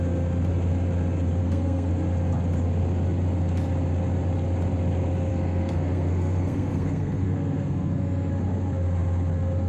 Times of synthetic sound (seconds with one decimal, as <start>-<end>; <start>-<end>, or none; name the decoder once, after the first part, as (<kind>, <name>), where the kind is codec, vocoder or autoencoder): 1.4-1.9 (codec, SNAC); 5.3-8.3

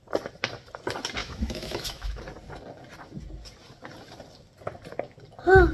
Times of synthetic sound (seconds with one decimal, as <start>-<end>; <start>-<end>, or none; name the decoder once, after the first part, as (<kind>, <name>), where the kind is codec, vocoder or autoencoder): 1.2-2.2 (autoencoder, DAC-VAE)

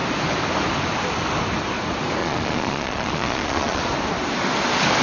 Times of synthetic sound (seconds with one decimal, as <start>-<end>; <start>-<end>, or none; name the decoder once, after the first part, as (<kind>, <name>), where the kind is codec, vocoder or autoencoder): 2.2-3.8 (vocoder, Vocos)

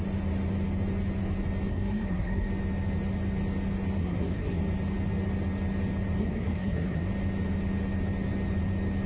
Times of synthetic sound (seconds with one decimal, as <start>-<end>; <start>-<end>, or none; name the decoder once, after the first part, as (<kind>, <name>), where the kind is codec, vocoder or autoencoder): 1.7-2.5 (codec, SNAC); 4.0-4.6; 6.2-7.1

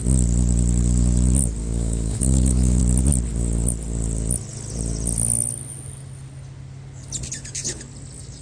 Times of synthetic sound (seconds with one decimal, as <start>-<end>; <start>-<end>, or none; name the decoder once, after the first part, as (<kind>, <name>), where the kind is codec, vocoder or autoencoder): 1.6-2.8 (autoencoder, DAC-VAE)

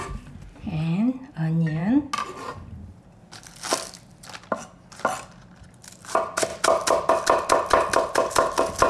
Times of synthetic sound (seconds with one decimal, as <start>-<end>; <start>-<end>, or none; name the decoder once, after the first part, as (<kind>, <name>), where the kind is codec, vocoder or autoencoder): none

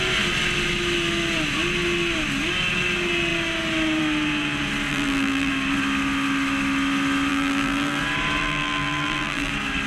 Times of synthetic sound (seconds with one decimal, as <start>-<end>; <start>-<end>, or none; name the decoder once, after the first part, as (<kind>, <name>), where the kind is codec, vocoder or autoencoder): 4.9-5.5 (vocoder, BigVGAN v2); 7.3-8.0; 8.4-9.5